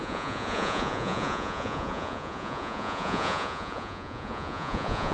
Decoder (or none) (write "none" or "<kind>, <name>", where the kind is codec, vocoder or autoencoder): vocoder, Vocos